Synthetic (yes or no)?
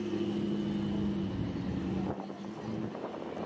no